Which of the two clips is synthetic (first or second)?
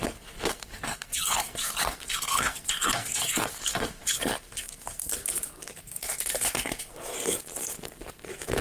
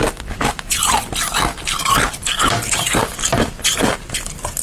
first